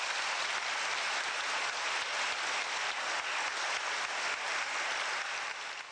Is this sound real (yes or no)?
yes